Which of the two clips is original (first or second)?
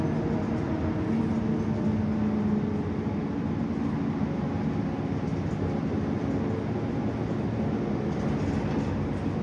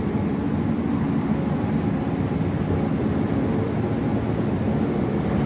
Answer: first